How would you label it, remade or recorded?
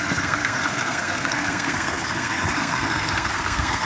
remade